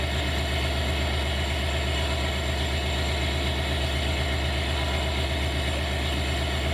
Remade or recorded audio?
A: recorded